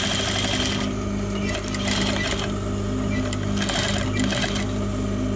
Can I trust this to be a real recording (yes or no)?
yes